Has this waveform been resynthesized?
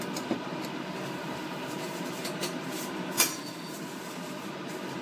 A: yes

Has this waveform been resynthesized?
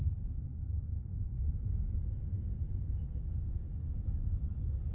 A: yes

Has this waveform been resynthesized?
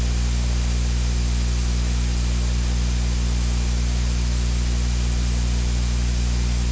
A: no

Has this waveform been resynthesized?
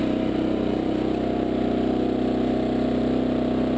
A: yes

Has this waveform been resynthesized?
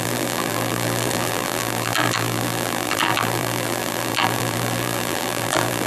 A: yes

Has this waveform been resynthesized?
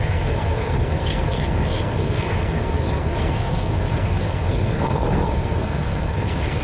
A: yes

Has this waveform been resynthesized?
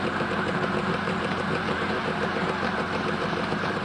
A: yes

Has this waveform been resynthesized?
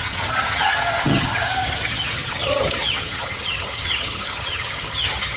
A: yes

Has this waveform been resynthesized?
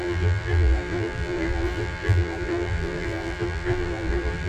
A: yes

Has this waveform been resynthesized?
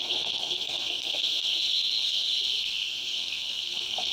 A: yes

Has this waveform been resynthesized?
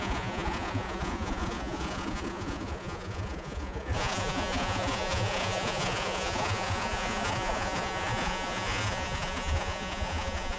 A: yes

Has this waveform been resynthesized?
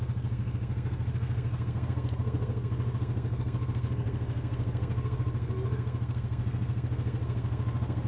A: yes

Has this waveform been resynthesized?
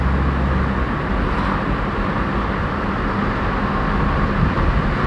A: no